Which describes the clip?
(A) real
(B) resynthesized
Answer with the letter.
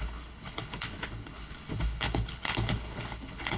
B